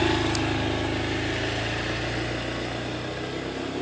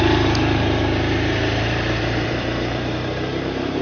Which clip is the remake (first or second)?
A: second